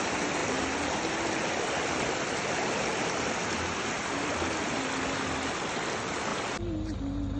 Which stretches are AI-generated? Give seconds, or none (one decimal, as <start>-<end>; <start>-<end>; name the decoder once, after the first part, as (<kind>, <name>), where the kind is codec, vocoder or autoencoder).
none